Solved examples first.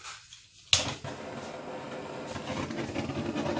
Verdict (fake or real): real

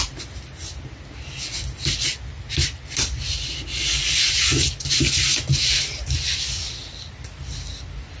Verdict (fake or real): real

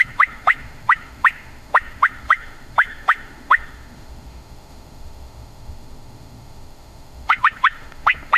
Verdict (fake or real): fake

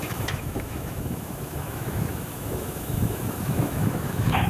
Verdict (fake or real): fake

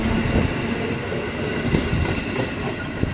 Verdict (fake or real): real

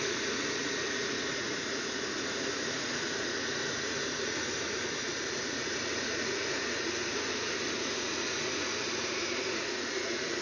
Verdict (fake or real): fake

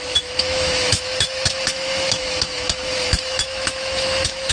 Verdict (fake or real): fake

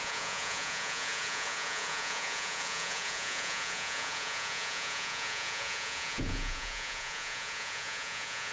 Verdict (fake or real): fake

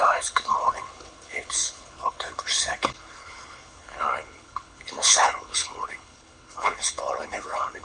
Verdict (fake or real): fake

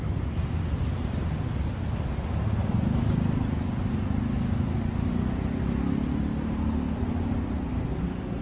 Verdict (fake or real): real